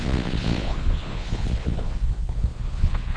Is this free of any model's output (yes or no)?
no